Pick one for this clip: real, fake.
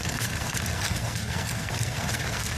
fake